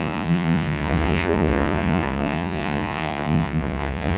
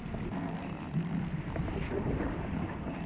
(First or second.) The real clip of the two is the second